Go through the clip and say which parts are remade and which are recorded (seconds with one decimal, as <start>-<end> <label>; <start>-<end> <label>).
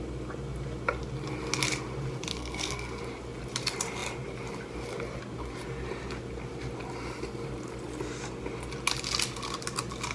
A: 0.0-2.3 recorded; 2.3-3.0 remade; 3.0-10.1 recorded